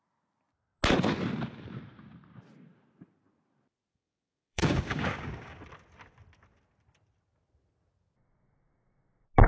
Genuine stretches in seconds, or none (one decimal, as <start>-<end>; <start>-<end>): 0.0-3.9; 5.6-9.5